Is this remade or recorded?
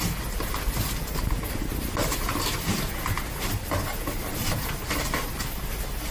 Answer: recorded